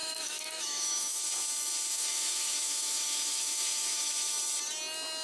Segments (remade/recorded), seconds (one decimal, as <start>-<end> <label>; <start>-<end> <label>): 0.0-1.2 remade; 1.2-1.9 recorded; 1.9-4.1 remade; 4.1-5.2 recorded